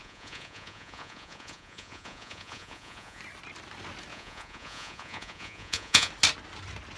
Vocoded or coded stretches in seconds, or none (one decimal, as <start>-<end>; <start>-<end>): 0.0-3.2; 4.1-6.1